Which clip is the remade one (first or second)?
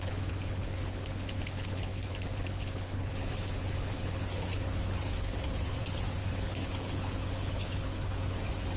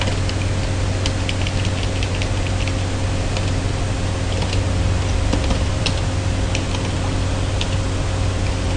first